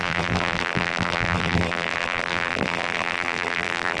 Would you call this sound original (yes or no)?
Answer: no